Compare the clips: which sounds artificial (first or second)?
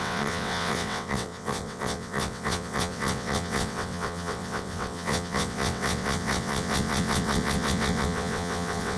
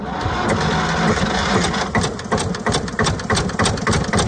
first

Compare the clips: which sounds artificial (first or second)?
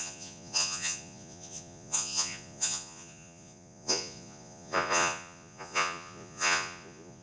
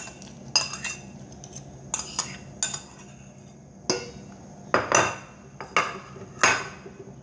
first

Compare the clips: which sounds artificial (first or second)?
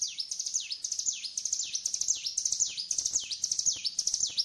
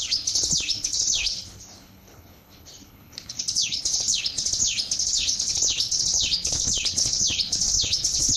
second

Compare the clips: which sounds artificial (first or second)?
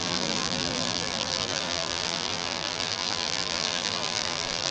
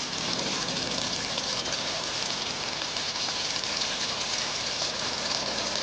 first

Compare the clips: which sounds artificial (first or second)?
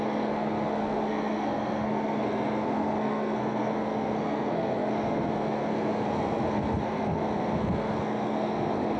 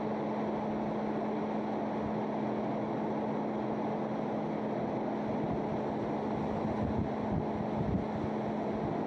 first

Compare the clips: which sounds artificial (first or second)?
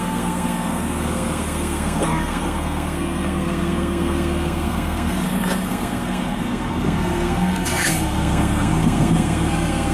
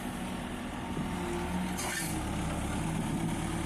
first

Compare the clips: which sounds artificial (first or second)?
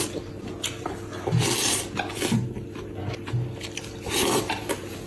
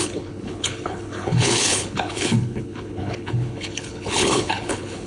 second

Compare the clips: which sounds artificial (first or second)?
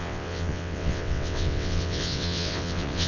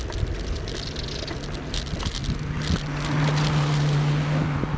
first